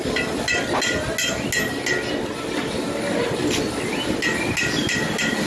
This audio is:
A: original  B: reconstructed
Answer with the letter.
A